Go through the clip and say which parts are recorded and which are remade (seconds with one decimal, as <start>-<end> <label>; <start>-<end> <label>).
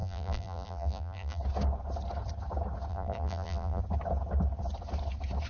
0.0-1.4 remade; 1.4-2.9 recorded; 2.9-3.8 remade; 3.8-5.5 recorded